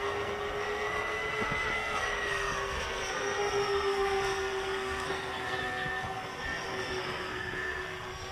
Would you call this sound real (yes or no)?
no